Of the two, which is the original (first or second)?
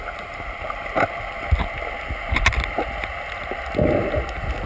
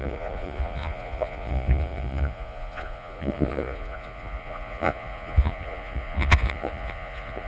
first